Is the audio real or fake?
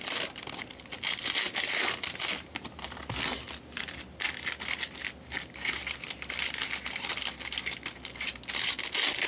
real